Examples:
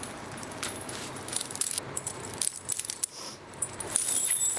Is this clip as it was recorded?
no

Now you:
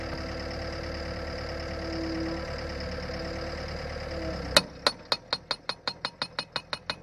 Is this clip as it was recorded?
yes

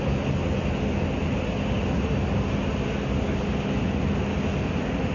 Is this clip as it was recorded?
yes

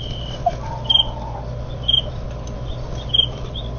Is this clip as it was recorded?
no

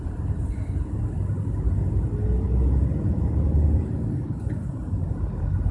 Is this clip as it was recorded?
yes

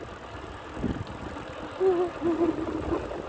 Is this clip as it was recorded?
yes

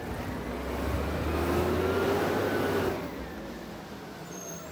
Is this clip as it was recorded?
yes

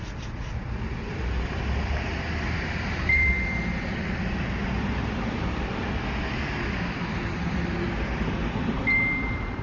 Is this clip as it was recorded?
no